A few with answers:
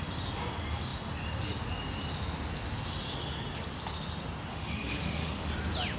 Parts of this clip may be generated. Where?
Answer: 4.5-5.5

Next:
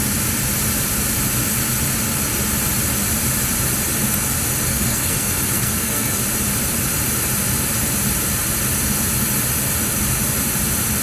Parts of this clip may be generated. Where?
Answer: 4.7-6.2

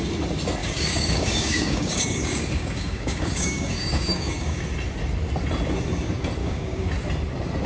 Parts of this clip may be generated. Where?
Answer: 0.6-4.6; 6.4-6.9

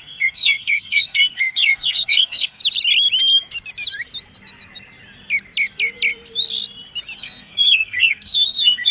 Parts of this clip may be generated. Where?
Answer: 0.0-2.6; 7.2-8.9

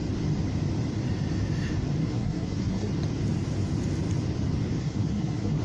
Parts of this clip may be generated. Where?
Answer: 2.0-2.9; 4.8-5.6